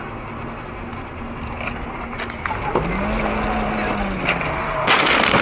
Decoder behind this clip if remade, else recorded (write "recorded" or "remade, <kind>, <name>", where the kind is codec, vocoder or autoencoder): recorded